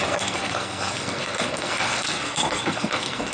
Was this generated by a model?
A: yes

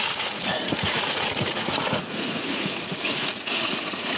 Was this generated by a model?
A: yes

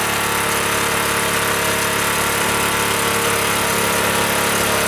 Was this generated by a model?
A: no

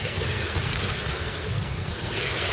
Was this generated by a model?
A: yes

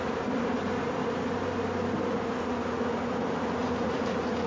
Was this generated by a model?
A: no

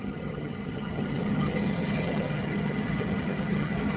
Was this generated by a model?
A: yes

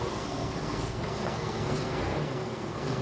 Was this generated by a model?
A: yes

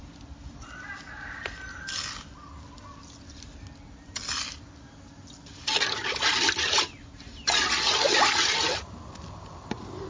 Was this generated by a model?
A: no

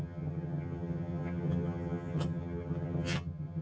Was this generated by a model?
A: yes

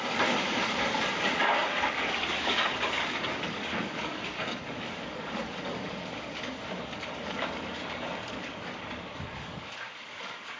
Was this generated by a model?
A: yes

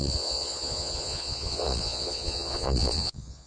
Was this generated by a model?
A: yes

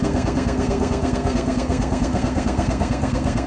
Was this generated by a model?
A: yes